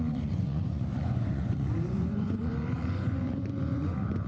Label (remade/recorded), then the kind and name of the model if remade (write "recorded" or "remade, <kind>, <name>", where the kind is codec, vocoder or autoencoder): remade, vocoder, Vocos